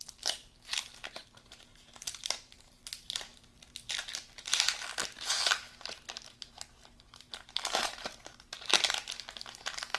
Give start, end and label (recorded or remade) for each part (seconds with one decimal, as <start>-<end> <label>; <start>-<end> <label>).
0.0-1.7 recorded; 1.7-2.8 remade; 2.8-5.0 recorded; 5.0-8.8 remade; 8.8-10.0 recorded